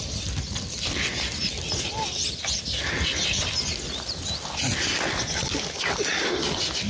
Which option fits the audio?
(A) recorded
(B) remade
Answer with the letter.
A